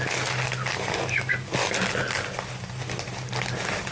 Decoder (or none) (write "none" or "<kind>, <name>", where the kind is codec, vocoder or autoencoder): none